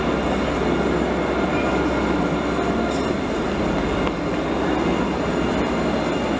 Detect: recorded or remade recorded